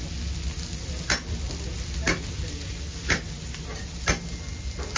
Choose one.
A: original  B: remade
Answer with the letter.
A